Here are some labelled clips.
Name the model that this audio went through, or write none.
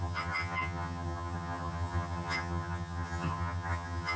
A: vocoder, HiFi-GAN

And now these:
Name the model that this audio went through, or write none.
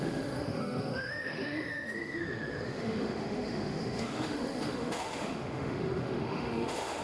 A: autoencoder, DAC-VAE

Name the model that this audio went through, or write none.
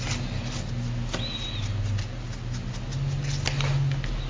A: none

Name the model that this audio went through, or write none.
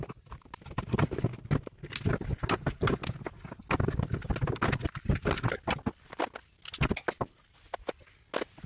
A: none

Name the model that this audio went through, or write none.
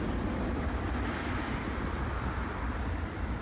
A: none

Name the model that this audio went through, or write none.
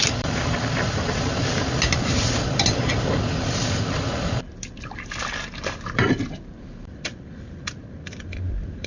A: vocoder, BigVGAN v2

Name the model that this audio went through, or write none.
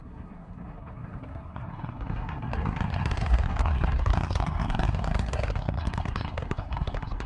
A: codec, SNAC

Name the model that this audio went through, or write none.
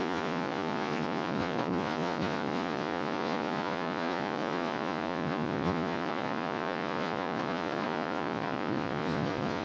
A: vocoder, Vocos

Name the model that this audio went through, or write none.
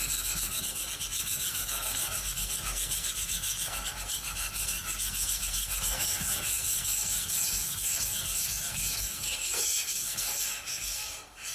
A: codec, SNAC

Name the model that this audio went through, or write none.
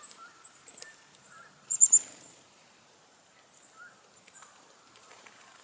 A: vocoder, BigVGAN v2